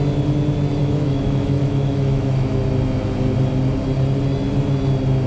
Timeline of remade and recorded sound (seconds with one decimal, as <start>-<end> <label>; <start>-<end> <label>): 0.0-0.8 recorded; 0.8-2.6 remade; 2.6-5.3 recorded